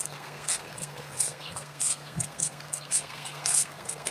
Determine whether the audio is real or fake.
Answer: fake